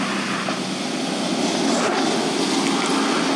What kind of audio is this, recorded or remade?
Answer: recorded